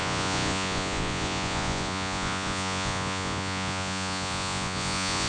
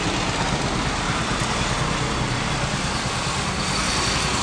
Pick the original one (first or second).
second